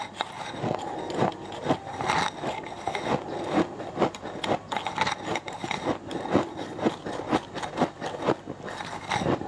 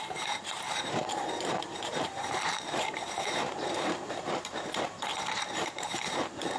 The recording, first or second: first